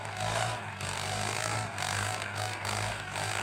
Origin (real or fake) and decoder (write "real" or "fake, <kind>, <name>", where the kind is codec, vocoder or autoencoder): fake, codec, DAC